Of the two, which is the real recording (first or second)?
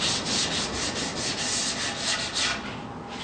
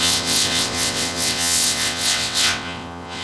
first